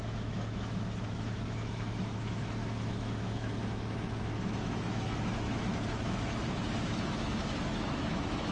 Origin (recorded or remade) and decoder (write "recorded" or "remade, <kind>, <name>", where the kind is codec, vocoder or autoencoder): remade, autoencoder, DAC-VAE